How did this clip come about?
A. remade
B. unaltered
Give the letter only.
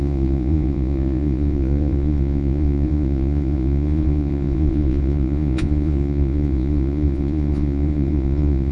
A